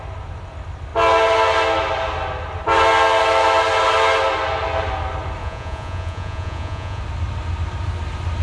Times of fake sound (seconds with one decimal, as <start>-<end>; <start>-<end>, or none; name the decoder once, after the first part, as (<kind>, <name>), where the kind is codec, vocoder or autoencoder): 5.4-7.0 (vocoder, Vocos)